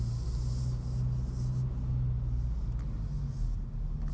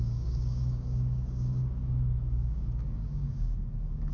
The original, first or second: first